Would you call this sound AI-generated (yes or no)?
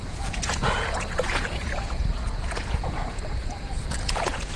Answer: yes